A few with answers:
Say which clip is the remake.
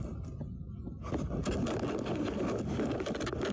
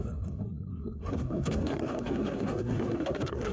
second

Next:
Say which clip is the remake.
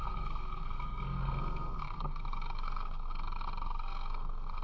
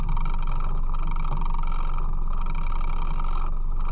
first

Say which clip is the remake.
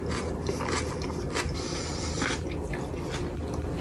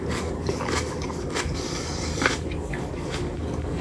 second